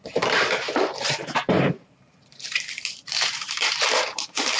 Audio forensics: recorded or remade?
remade